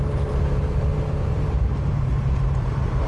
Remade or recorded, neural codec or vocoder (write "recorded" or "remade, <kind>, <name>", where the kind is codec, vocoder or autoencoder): remade, vocoder, BigVGAN v2